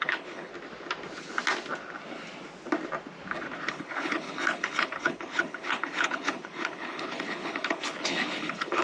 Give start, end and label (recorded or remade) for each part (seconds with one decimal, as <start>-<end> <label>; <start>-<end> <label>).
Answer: 0.0-0.5 remade; 0.5-3.7 recorded; 3.7-8.8 remade